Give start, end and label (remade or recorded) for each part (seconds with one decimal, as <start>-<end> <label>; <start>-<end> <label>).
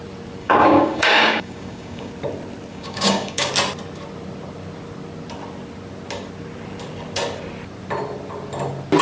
0.0-0.4 recorded; 0.4-2.1 remade; 2.1-2.7 recorded; 2.7-3.5 remade; 3.5-9.0 recorded